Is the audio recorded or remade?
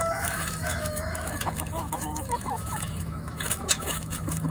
remade